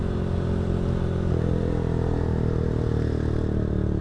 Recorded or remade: recorded